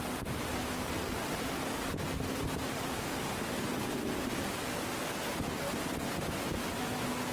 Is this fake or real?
real